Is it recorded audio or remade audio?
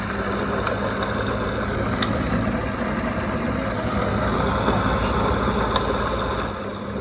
recorded